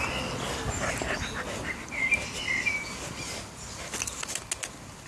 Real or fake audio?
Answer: real